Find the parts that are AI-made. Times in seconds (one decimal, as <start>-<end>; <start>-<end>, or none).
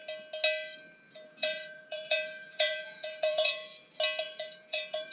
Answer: 1.1-3.7; 4.2-5.1